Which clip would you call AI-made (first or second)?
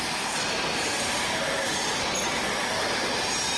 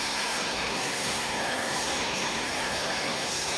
second